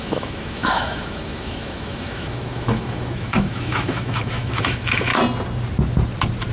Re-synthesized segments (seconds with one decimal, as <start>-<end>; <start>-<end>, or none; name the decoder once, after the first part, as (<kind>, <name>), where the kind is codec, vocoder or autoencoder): 0.0-5.1 (autoencoder, DAC-VAE)